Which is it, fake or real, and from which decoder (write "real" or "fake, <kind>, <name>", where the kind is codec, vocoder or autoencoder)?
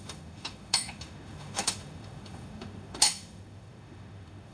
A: fake, autoencoder, DAC-VAE